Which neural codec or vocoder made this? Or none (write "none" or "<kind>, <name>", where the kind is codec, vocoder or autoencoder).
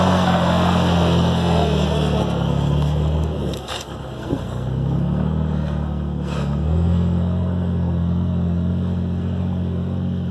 codec, SNAC